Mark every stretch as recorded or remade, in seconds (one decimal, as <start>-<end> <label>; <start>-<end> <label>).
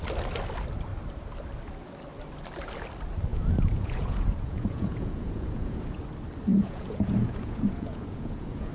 0.0-3.3 recorded; 3.3-6.0 remade; 6.0-6.5 recorded; 6.5-8.7 remade